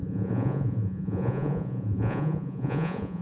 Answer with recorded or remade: remade